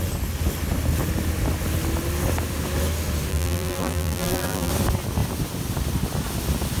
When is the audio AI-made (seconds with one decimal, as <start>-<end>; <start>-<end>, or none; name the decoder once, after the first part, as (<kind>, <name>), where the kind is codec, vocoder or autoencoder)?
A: 3.3-4.7 (vocoder, BigVGAN v2)